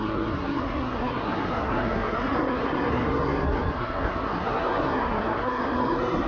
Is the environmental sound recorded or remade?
remade